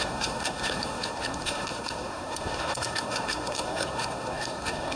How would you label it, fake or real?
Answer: fake